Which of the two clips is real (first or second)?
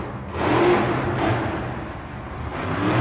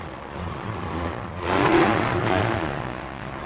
first